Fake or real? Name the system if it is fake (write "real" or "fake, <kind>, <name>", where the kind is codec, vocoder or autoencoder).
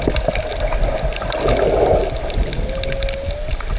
real